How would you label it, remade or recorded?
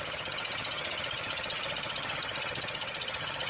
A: remade